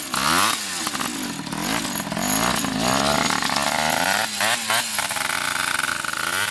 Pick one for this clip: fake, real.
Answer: real